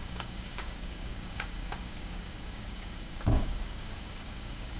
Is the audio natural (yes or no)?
no